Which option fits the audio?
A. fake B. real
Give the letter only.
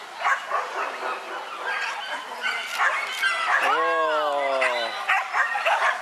B